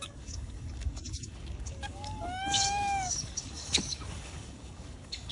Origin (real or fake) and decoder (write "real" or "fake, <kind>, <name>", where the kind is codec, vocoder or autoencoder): fake, codec, DAC